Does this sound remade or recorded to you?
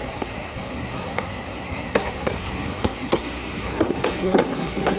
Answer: remade